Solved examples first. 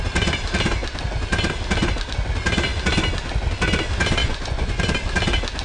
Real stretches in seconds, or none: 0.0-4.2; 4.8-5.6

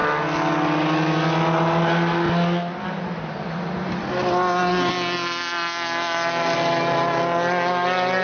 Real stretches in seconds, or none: 0.0-8.2

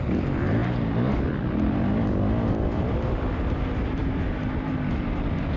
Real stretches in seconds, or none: 0.0-5.6

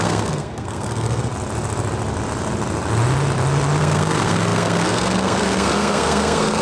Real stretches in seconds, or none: 1.3-3.8

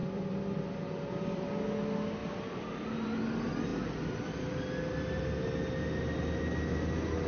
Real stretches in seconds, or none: 1.5-2.2; 3.2-3.7; 5.2-7.3